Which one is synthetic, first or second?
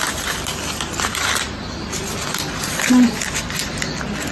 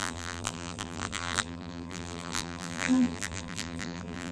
second